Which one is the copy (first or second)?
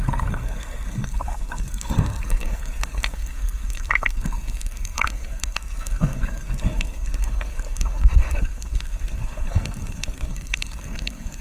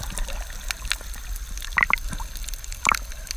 first